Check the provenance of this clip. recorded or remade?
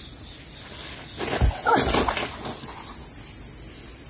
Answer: recorded